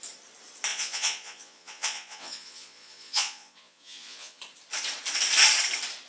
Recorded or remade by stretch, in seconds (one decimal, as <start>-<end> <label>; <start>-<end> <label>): 0.0-0.7 recorded; 0.7-4.4 remade; 4.4-6.1 recorded